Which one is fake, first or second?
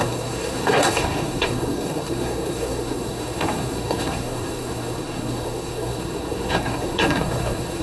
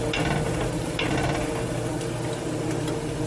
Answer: first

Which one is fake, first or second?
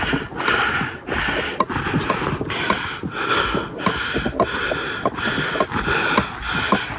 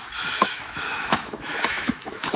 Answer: second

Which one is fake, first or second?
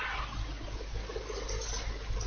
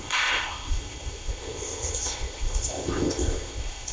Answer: second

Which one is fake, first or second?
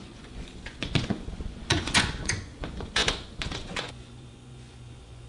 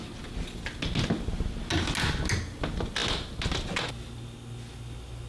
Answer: first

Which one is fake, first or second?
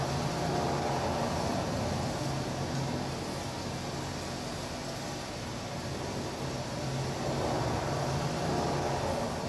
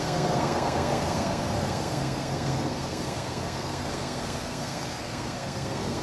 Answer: second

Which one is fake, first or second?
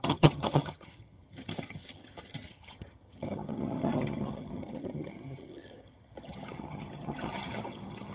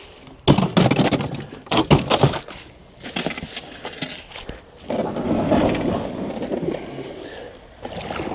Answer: first